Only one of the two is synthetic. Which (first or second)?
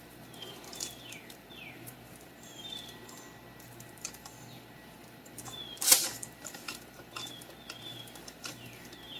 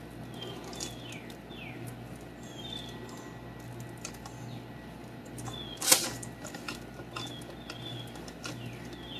first